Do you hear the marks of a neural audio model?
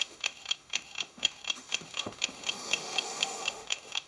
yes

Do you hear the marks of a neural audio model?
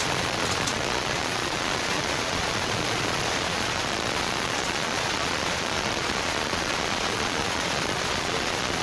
yes